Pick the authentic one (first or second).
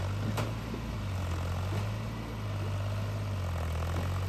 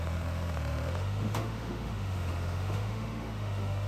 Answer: first